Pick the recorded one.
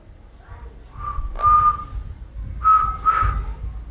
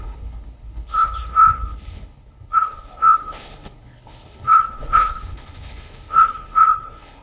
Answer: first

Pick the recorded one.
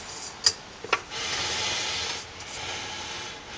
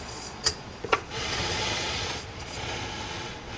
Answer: first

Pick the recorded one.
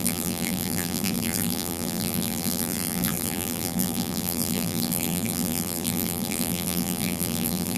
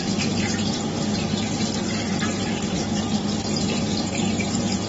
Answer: second